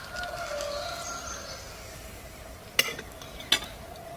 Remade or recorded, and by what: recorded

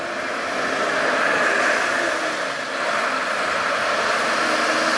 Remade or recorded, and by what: recorded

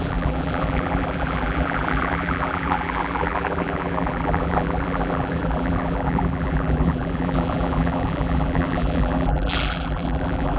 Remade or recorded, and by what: remade, vocoder, BigVGAN v2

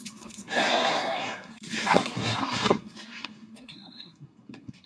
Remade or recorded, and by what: remade, codec, SNAC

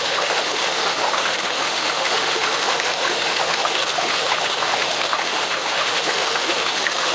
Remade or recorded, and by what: remade, autoencoder, DAC-VAE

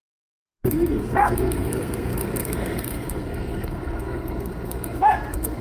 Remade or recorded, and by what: remade, codec, SNAC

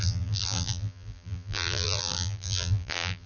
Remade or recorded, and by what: remade, vocoder, BigVGAN v2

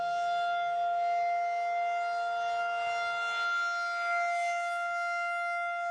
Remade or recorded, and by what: recorded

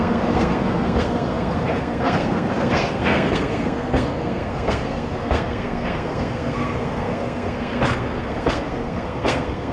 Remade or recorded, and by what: remade, codec, SNAC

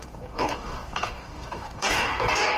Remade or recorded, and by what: remade, codec, DAC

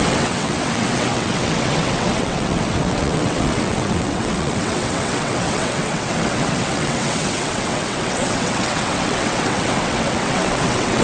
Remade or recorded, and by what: remade, vocoder, WaveNeXt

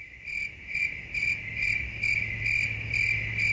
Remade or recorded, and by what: recorded